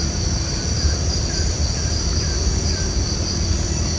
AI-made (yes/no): no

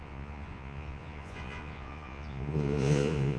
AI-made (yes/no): yes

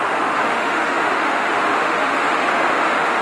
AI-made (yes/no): yes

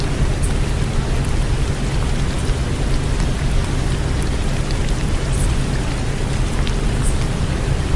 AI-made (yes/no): no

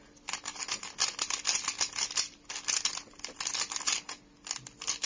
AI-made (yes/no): no